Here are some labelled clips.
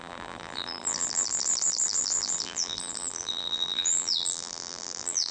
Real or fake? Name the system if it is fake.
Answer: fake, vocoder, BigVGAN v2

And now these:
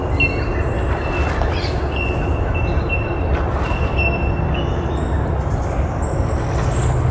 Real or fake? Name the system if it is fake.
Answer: real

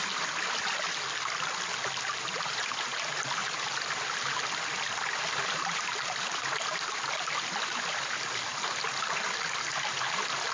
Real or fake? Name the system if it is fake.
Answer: real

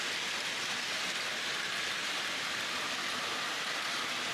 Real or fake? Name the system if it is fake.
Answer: real